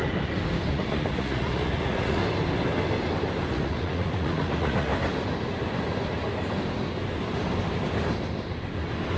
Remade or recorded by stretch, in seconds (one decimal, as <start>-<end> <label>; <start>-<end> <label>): 0.0-0.7 recorded; 0.7-2.2 remade; 2.2-3.5 recorded; 3.5-4.9 remade; 4.9-9.2 recorded